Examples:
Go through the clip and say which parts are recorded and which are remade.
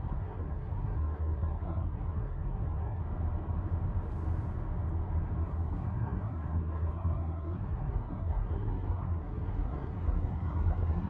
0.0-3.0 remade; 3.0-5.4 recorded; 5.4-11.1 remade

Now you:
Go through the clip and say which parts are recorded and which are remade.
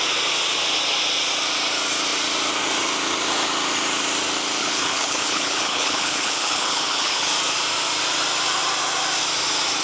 0.0-4.6 recorded; 4.6-7.3 remade; 7.3-9.8 recorded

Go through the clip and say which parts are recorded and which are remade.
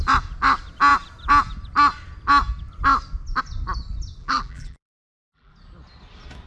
0.0-4.2 recorded; 4.2-5.5 remade; 5.5-6.5 recorded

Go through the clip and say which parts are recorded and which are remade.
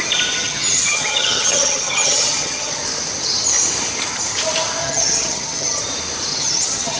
0.0-0.4 recorded; 0.4-2.8 remade; 2.8-4.8 recorded; 4.8-5.8 remade; 5.8-6.3 recorded; 6.3-7.0 remade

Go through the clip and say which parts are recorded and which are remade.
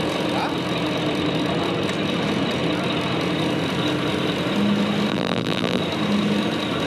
0.0-5.1 recorded; 5.1-5.8 remade; 5.8-6.9 recorded